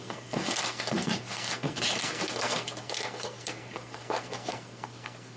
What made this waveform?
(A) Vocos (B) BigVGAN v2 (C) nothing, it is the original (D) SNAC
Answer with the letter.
D